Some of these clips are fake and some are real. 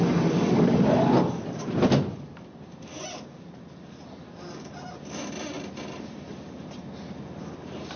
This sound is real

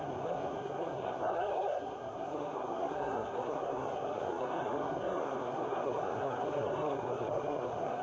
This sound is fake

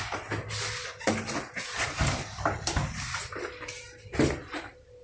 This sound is real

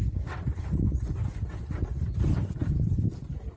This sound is real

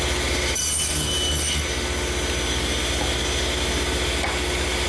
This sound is real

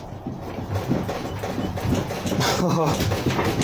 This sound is real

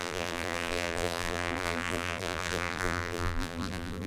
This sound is fake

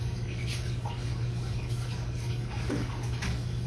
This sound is fake